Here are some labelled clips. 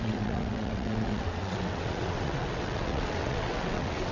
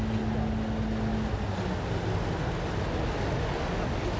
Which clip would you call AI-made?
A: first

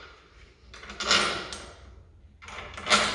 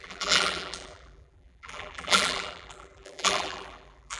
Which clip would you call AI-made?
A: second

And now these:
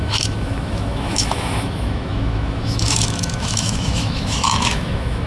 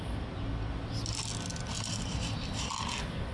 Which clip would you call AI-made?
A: first